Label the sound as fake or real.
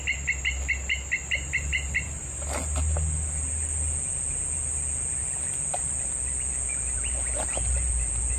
real